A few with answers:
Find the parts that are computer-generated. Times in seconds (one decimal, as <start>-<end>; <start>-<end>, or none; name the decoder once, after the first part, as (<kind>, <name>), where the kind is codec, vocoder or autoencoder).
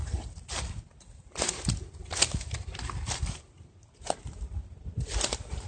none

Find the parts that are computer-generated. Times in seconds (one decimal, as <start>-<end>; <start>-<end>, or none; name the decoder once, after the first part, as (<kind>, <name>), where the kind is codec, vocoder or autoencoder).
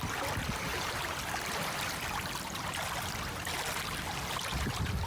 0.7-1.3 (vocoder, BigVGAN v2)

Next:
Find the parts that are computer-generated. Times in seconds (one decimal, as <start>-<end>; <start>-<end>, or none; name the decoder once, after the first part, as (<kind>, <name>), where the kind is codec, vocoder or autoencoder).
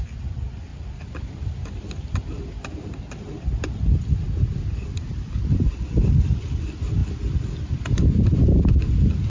none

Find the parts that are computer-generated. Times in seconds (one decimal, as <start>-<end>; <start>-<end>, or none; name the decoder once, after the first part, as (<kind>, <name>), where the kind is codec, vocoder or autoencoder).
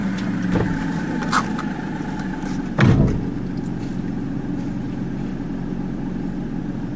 none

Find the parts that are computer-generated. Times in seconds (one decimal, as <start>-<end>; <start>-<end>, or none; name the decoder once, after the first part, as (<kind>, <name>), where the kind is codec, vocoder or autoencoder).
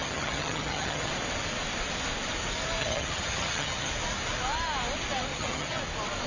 0.0-1.1 (vocoder, HiFi-GAN); 2.8-3.9; 5.3-5.8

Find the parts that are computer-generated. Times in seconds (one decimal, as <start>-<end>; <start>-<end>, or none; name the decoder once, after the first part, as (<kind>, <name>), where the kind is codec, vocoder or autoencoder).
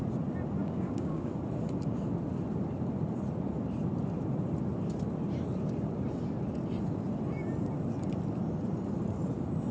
0.6-1.3 (codec, DAC)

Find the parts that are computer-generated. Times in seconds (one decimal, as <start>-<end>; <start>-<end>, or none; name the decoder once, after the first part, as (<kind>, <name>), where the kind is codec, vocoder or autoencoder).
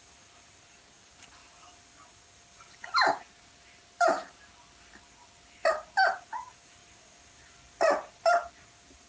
none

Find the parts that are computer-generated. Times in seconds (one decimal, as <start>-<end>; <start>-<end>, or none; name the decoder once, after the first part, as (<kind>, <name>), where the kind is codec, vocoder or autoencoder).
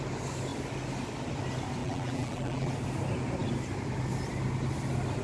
1.8-2.7 (vocoder, BigVGAN v2)